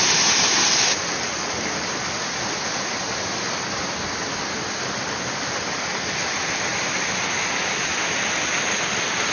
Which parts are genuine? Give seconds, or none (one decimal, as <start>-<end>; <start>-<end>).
0.0-9.3